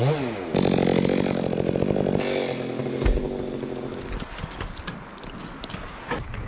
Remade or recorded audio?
recorded